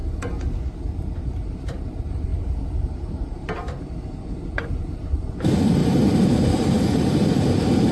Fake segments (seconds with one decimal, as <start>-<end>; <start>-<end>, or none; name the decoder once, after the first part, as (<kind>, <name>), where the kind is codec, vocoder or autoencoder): 1.8-7.9 (vocoder, BigVGAN v2)